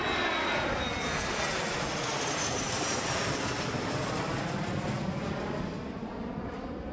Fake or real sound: real